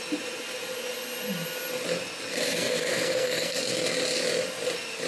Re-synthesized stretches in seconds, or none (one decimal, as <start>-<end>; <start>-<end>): 2.3-3.6